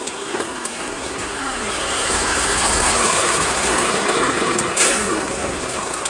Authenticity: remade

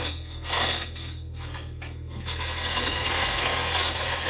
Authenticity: remade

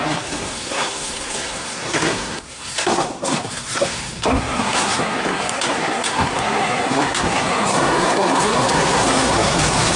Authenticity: remade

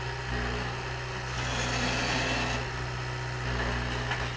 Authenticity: recorded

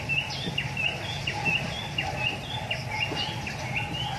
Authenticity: recorded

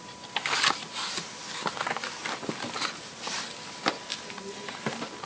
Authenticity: recorded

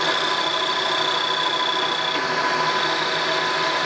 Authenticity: recorded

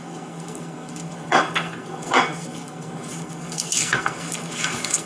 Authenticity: remade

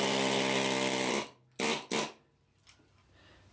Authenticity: recorded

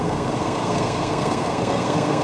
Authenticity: remade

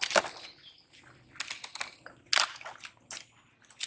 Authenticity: recorded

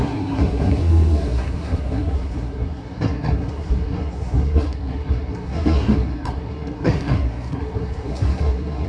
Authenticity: remade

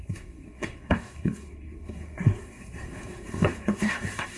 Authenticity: remade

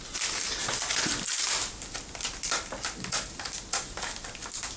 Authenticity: recorded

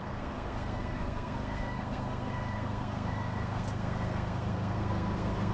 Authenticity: remade